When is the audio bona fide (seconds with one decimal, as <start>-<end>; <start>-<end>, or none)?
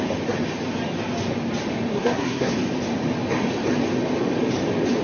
0.0-1.9; 2.5-5.0